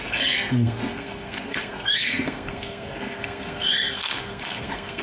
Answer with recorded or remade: remade